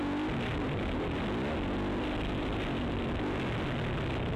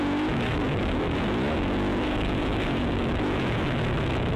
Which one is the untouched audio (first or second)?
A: first